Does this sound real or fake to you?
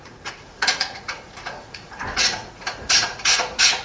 fake